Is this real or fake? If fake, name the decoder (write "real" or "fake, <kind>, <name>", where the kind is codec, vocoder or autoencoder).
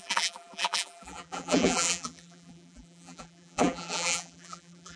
fake, vocoder, BigVGAN v2